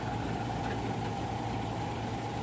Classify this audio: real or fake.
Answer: real